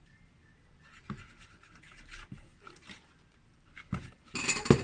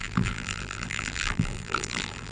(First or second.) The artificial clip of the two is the second